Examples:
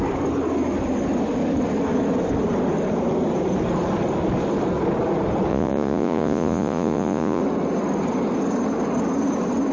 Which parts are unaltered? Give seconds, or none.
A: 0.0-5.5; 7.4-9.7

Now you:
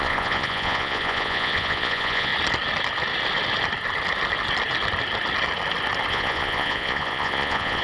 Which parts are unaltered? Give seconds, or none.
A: 2.3-6.1